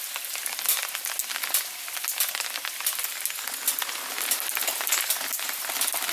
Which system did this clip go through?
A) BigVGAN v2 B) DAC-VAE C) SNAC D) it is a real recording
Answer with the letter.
D